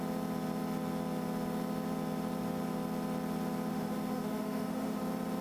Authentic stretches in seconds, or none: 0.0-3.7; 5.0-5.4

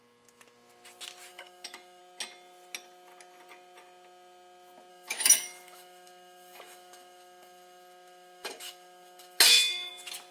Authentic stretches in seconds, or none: 0.0-1.3; 2.0-4.9; 9.9-10.3

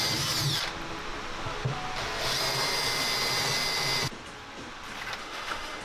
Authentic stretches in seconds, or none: 0.0-5.2

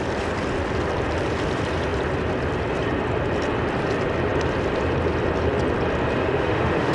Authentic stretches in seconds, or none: 0.0-6.2